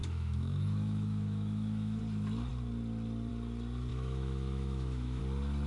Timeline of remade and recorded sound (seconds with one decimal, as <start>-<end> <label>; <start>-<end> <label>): 0.0-2.0 remade; 2.0-3.9 recorded; 3.9-5.2 remade; 5.2-5.7 recorded